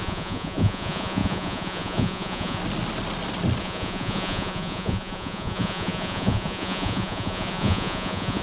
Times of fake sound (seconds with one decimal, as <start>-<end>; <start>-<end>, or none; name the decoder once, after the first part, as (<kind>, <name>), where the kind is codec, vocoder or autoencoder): 0.0-2.6 (vocoder, Vocos); 3.6-8.4